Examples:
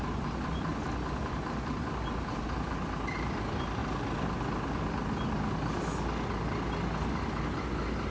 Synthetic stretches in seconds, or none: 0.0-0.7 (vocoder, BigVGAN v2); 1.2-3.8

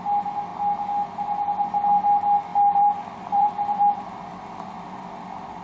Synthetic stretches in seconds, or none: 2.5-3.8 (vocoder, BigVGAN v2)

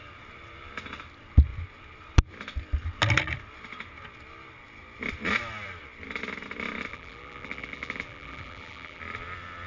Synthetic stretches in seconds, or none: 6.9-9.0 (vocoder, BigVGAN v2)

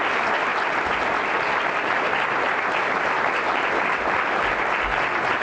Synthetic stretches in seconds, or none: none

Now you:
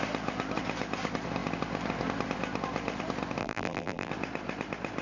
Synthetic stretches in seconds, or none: 3.4-4.1 (vocoder, BigVGAN v2)

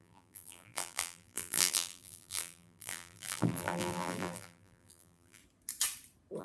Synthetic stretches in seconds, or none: 0.0-5.4 (vocoder, BigVGAN v2)